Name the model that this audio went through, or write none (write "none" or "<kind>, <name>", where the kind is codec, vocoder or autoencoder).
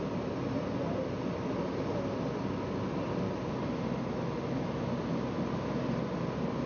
none